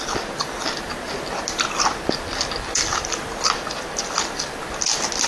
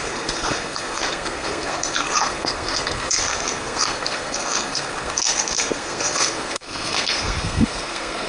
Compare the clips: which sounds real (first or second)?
first